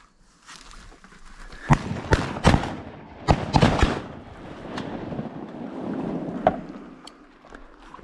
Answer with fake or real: real